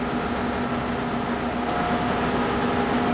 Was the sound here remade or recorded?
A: recorded